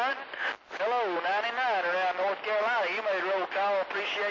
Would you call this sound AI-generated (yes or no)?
no